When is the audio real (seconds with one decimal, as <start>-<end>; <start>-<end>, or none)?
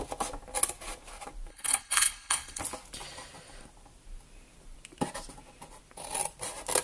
0.0-1.5; 2.6-6.8